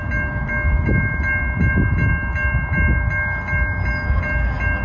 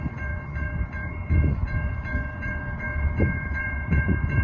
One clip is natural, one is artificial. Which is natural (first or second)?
first